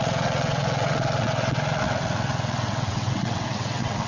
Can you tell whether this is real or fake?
fake